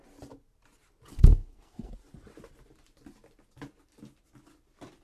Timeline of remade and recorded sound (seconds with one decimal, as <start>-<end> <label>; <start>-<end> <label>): 0.0-1.1 recorded; 1.1-1.9 remade; 1.9-5.0 recorded